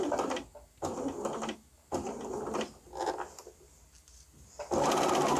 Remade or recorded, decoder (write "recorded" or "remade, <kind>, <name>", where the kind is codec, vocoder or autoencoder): recorded